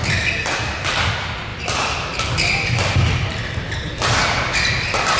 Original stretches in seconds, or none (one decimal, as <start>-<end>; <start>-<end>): 0.0-5.2